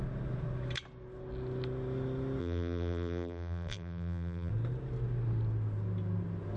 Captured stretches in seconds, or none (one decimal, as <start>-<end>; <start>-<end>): 0.0-2.4; 4.5-6.6